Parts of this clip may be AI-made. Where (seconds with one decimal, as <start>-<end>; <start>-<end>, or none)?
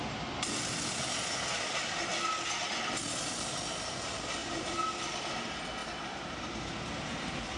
4.4-5.0; 5.8-7.6